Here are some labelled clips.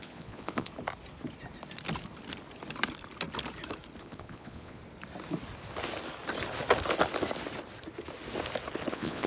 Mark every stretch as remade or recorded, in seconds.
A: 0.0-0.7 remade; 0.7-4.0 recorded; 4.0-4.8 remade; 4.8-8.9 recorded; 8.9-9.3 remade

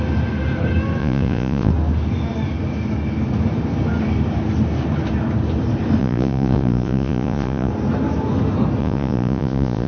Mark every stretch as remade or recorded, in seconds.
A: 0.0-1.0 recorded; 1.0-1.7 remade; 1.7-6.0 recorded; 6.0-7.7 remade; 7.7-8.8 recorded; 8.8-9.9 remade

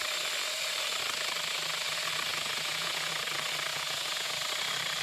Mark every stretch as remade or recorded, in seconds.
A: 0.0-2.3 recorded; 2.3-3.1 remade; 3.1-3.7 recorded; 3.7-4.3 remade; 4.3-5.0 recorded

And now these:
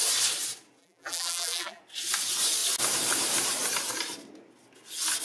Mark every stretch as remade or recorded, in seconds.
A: 0.0-0.8 recorded; 0.8-1.8 remade; 1.8-5.2 recorded